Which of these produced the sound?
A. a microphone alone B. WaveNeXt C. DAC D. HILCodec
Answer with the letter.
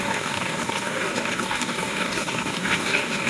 C